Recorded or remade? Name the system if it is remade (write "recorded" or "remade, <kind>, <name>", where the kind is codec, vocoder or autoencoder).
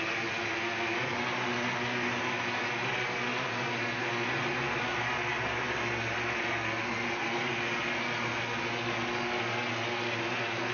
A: recorded